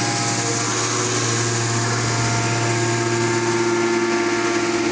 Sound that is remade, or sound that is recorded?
recorded